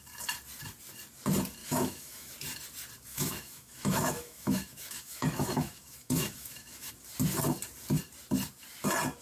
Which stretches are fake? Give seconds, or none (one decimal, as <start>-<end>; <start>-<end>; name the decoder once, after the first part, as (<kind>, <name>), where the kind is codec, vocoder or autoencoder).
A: 1.6-2.3 (autoencoder, DAC-VAE); 3.1-6.9